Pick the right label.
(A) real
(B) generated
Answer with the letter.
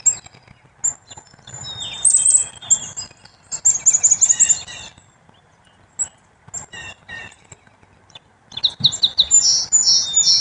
A